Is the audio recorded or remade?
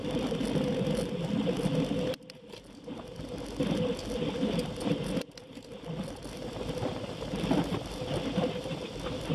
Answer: recorded